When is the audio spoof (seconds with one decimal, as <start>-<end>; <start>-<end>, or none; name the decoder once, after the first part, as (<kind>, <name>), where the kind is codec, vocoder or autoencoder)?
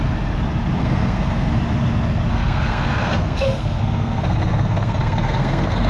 0.8-1.5 (codec, SNAC); 2.3-5.9